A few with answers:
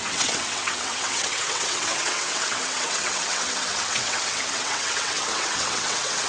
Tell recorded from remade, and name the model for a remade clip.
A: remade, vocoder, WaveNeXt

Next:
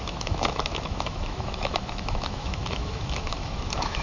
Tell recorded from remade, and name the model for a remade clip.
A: remade, autoencoder, DAC-VAE